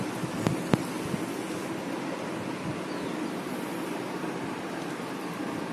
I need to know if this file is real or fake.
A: real